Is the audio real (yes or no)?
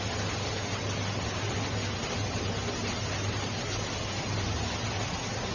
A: yes